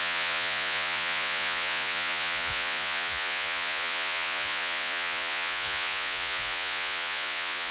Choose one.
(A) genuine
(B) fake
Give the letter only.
B